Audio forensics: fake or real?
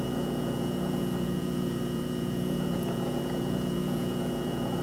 fake